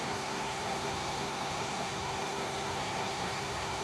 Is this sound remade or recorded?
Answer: remade